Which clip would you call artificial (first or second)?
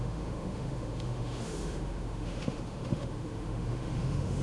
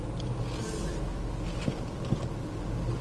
first